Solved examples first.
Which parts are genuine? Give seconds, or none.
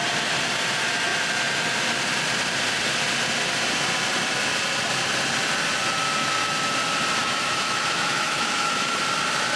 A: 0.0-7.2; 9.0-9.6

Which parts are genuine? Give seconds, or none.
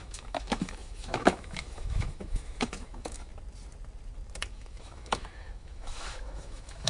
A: 3.3-4.5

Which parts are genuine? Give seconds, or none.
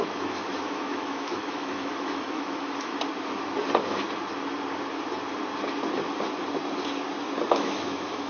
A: 2.9-7.4